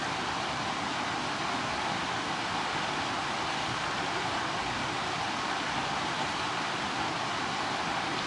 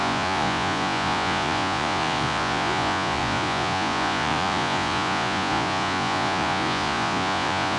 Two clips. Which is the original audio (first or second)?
first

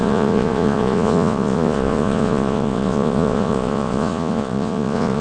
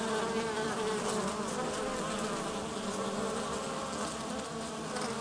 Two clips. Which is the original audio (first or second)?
second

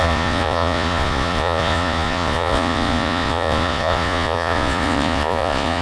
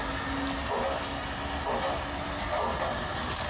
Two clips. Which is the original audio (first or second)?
second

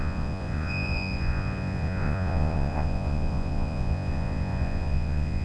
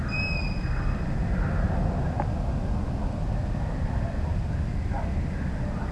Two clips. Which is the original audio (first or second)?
second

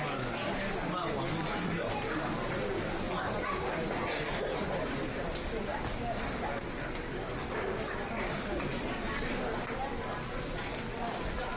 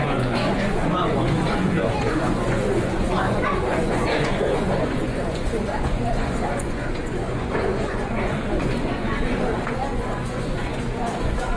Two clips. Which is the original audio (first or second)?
first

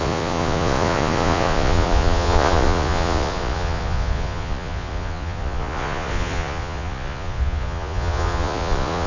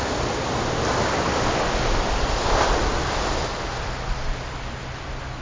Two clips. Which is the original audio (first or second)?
second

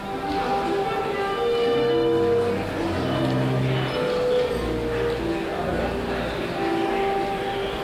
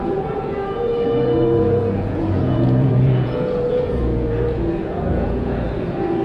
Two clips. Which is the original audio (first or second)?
first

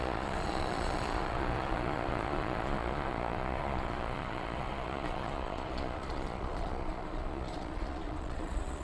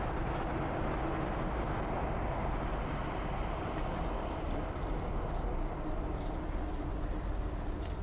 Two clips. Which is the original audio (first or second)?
second